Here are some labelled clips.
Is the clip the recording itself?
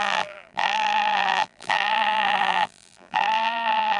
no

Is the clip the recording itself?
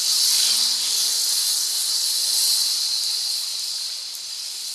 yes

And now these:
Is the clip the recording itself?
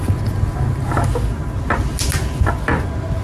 yes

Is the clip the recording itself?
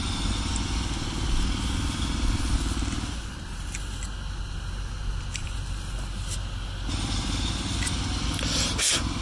yes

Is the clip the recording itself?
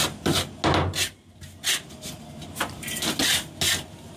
yes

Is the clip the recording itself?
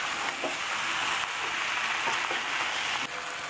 yes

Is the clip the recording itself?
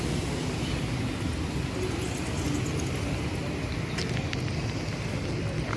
yes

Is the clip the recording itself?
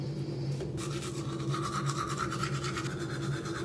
yes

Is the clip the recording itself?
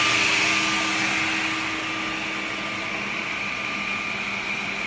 yes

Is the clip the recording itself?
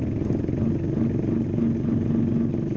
yes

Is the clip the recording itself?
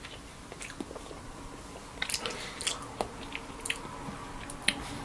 yes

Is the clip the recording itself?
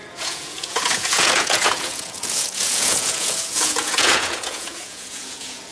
no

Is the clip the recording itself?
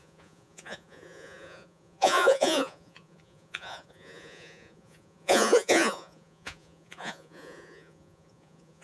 no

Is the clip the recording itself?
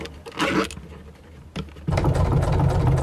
yes